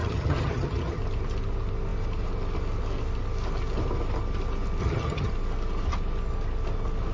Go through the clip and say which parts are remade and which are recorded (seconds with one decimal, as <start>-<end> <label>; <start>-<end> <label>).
0.0-1.0 remade; 1.0-4.8 recorded; 4.8-5.3 remade; 5.3-7.1 recorded